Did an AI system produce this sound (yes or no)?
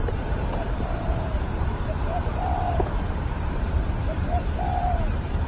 yes